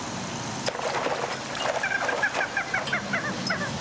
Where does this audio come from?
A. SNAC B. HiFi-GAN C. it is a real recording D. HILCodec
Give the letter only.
C